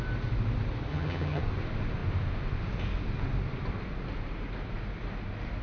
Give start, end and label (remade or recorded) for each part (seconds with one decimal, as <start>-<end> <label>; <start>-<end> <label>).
0.0-0.9 recorded; 0.9-1.4 remade; 1.4-5.6 recorded